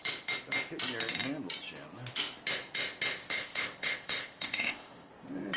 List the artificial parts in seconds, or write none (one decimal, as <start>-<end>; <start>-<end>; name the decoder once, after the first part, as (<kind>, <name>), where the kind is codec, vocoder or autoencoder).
3.2-5.1 (codec, ZipCodec)